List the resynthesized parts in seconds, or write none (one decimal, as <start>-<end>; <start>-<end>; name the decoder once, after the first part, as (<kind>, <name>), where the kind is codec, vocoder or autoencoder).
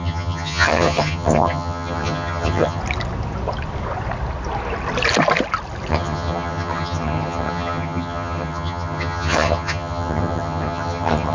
0.0-2.8 (vocoder, HiFi-GAN); 5.9-11.3